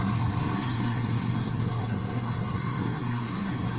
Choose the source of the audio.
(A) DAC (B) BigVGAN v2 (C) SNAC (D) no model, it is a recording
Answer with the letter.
C